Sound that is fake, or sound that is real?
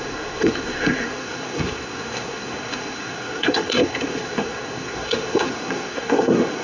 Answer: fake